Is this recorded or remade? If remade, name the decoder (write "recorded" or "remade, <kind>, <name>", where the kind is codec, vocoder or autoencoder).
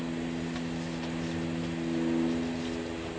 recorded